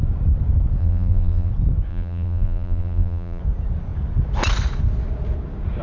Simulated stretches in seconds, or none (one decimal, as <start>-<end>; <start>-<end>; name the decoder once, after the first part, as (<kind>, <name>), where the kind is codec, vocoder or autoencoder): 0.8-1.5 (vocoder, BigVGAN v2); 1.9-3.4